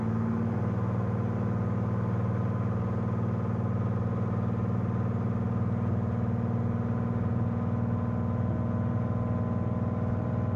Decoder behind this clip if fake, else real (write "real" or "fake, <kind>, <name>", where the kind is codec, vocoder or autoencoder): real